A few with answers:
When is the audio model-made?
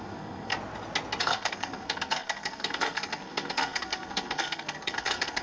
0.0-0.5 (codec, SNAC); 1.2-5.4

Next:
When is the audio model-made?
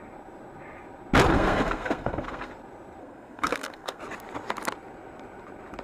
1.3-2.5 (codec, SNAC); 3.0-4.0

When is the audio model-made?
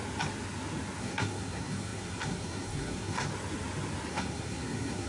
1.0-3.3 (codec, SNAC); 4.1-5.1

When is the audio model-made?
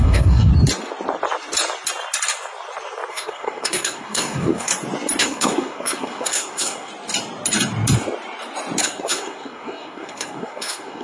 0.0-0.5 (codec, SNAC); 3.1-4.7; 5.2-6.9; 8.8-11.0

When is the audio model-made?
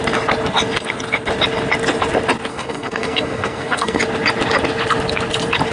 2.5-4.0 (codec, SNAC)